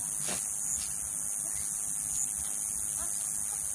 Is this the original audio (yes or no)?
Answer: yes